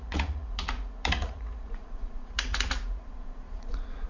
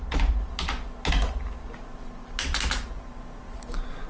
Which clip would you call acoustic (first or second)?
second